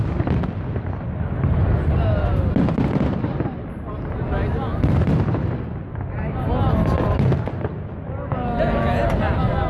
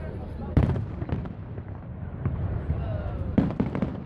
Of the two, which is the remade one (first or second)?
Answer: second